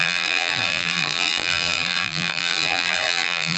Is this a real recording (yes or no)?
no